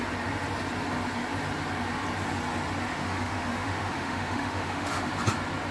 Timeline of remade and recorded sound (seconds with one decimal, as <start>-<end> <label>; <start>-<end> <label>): 0.0-2.9 recorded; 2.9-5.1 remade; 5.1-5.7 recorded